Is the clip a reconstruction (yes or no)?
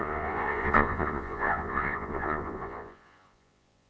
yes